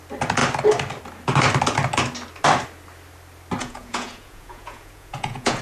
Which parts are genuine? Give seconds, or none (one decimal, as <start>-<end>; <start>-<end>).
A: 0.0-3.6